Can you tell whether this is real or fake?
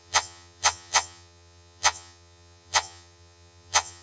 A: fake